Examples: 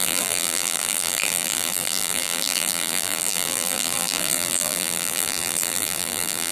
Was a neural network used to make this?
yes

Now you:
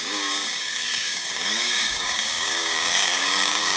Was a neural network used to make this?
yes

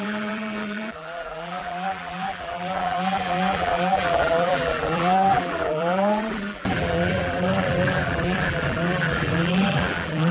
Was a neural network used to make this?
yes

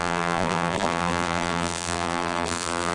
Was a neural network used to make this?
yes